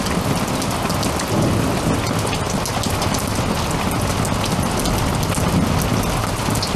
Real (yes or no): yes